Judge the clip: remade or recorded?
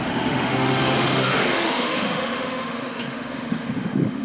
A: remade